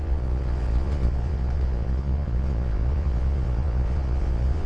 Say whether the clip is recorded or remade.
remade